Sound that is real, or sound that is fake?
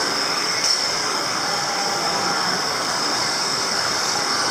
fake